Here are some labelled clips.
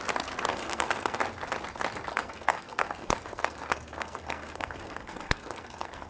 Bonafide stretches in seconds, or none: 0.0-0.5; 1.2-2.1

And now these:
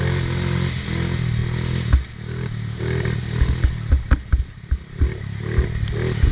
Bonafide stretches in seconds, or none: 0.0-6.3

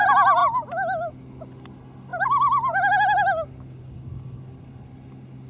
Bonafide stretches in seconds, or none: 0.0-5.5

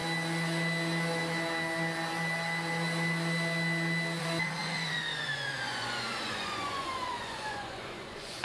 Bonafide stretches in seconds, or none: 0.0-4.2

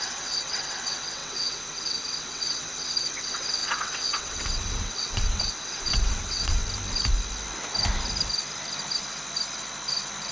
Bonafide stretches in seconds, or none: 6.6-10.3

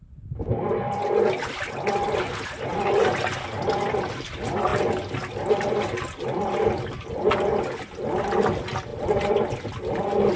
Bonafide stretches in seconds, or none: 0.0-10.4

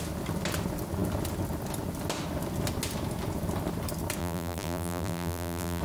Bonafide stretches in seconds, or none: 0.0-4.2